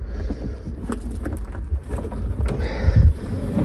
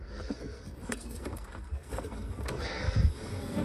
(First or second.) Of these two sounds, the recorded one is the first